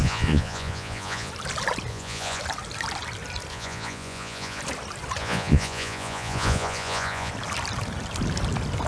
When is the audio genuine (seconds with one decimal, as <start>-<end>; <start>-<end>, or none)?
1.3-1.9; 2.4-3.5; 4.6-5.2; 7.3-8.9